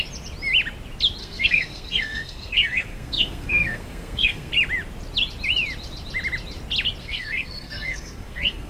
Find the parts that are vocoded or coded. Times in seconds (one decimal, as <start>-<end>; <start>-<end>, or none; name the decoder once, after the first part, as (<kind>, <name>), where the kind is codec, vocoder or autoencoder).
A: 1.2-4.5 (codec, SNAC); 7.0-8.7